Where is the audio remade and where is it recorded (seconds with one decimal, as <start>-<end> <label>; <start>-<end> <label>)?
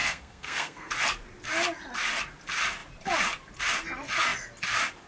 0.0-0.9 remade; 0.9-5.1 recorded